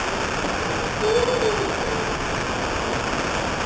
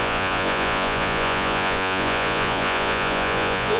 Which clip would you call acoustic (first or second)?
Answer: first